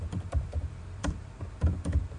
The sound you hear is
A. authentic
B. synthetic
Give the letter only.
B